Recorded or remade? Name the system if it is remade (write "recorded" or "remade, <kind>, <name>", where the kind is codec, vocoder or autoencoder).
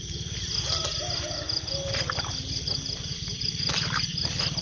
recorded